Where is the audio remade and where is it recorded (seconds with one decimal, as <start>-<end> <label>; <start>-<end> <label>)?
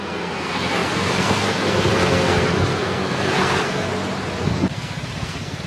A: 0.0-3.9 remade; 3.9-4.4 recorded; 4.4-5.7 remade